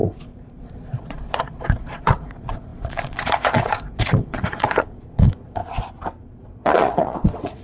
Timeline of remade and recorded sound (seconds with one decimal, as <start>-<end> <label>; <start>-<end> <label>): 0.0-5.6 remade; 5.6-6.2 recorded; 6.2-7.6 remade